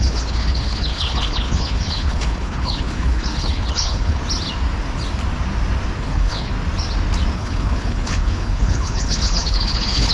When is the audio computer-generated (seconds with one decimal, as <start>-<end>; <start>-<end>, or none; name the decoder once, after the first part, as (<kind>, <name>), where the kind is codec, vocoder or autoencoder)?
0.0-4.2 (codec, HILCodec); 6.0-6.5; 7.3-10.1